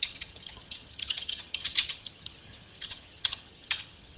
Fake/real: fake